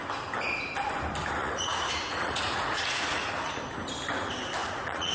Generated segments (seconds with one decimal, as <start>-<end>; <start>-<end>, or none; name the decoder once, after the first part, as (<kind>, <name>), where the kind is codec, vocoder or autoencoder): 1.4-3.3 (vocoder, Vocos); 4.6-5.1